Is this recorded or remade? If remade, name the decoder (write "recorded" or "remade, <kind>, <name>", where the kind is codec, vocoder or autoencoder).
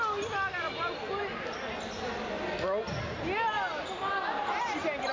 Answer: recorded